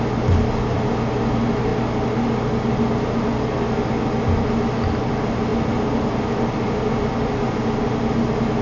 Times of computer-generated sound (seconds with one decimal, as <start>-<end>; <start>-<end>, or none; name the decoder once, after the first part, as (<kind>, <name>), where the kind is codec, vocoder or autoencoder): none